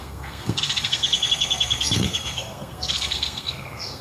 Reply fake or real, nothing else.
fake